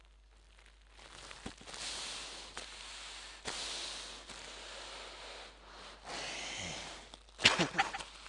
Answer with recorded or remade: recorded